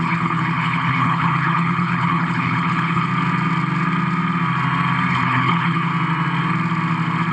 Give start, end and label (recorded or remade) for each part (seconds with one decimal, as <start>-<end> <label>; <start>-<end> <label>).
0.0-3.1 remade; 3.1-5.1 recorded; 5.1-5.9 remade; 5.9-7.3 recorded